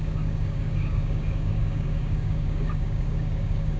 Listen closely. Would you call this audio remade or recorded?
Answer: remade